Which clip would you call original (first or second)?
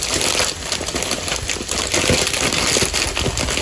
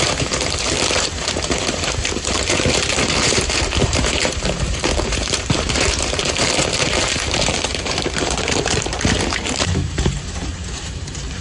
first